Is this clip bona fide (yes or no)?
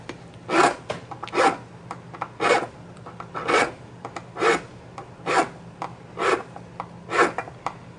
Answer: yes